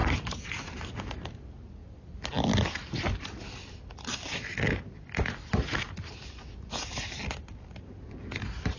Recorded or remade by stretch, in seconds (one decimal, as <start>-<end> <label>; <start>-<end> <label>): 0.0-8.8 recorded